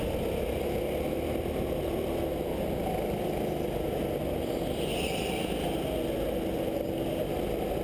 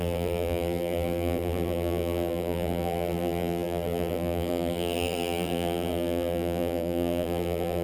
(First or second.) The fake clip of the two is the second